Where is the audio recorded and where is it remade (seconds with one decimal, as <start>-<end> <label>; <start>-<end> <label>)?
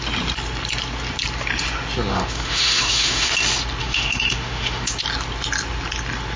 0.0-2.1 recorded; 2.1-3.3 remade; 3.3-3.8 recorded; 3.8-4.9 remade; 4.9-6.4 recorded